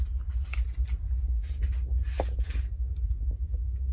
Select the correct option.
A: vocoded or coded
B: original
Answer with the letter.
B